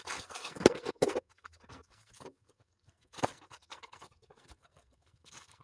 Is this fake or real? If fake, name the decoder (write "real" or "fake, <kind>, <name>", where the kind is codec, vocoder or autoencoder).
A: fake, codec, SNAC